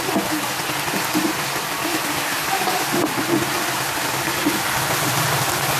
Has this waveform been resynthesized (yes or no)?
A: no